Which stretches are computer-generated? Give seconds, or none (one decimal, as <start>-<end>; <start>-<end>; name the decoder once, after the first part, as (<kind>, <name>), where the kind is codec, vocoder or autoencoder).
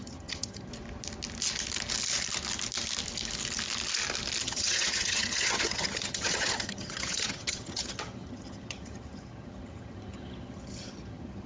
0.0-0.7 (vocoder, HiFi-GAN); 4.4-11.5